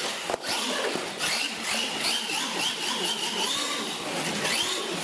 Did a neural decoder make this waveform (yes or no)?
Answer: no